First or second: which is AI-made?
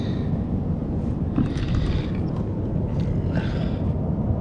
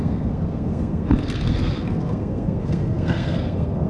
second